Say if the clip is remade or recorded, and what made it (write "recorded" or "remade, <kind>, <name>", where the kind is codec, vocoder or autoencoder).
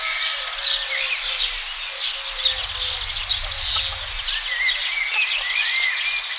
recorded